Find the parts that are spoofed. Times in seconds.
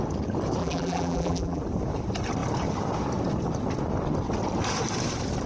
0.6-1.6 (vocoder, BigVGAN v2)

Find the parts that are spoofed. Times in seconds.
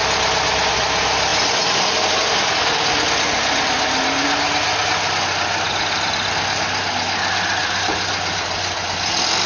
none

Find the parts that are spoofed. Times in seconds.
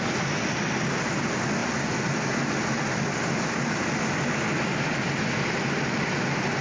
none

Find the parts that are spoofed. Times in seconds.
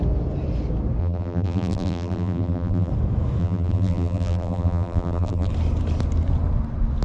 1.0-2.9 (vocoder, BigVGAN v2); 3.4-5.5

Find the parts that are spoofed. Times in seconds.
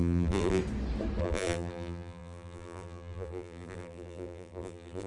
0.0-0.6 (vocoder, BigVGAN v2); 1.2-5.1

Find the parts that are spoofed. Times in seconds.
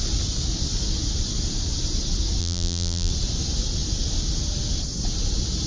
2.4-3.1 (vocoder, BigVGAN v2)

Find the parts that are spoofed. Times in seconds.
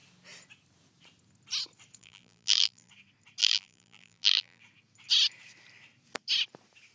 2.0-2.9 (vocoder, BigVGAN v2); 3.4-4.6